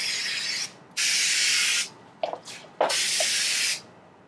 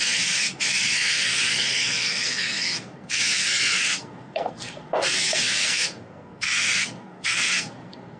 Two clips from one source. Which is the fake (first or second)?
second